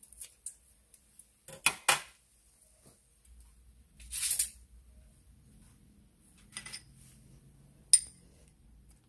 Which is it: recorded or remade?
recorded